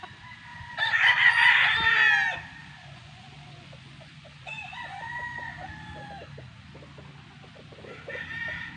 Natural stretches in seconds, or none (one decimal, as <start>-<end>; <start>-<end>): 0.0-0.5; 1.6-2.6; 6.1-8.8

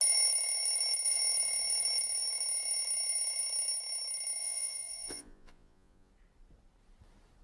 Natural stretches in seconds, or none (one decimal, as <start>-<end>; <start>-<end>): 0.0-4.4; 6.1-7.4

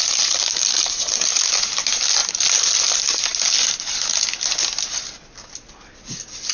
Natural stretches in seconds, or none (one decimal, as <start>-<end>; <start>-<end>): 0.0-6.5

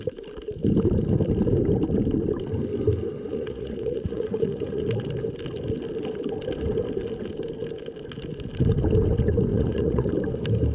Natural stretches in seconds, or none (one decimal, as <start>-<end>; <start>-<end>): 0.0-3.3; 4.8-9.5; 10.1-10.7

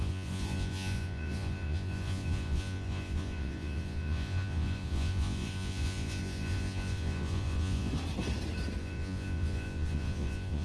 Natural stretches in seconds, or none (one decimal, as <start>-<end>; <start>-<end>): 7.9-8.8

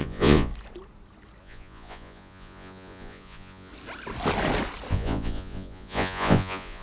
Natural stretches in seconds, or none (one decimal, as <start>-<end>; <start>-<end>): 0.5-1.4; 3.7-4.9